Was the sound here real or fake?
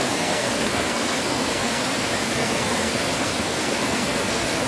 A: fake